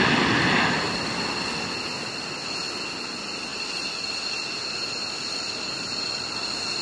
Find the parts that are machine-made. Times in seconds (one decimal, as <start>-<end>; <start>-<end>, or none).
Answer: none